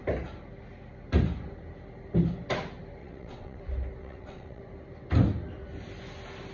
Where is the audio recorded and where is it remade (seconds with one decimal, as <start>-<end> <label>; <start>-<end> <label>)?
0.0-3.0 recorded; 3.0-3.6 remade; 3.6-4.0 recorded; 4.0-4.6 remade; 4.6-6.5 recorded